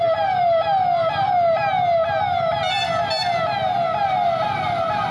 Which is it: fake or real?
real